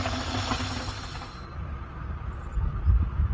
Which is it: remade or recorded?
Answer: recorded